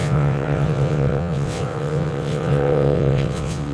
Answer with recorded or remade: remade